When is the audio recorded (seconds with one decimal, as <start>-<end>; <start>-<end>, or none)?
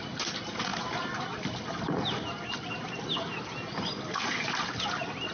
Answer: 0.0-5.3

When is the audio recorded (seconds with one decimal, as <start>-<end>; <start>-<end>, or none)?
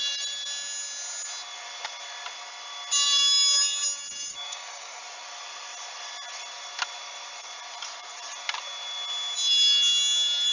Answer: 0.0-4.3; 5.0-10.5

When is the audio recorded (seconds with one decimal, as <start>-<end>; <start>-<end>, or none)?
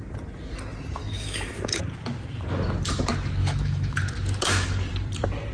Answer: 0.0-1.0; 1.8-3.4; 4.0-5.5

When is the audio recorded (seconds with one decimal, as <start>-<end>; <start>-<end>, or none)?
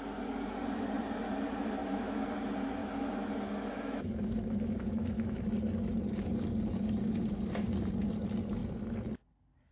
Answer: 0.0-1.8; 2.3-2.8; 5.4-9.7